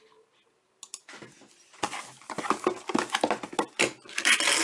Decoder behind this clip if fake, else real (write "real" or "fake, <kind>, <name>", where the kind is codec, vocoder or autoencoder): real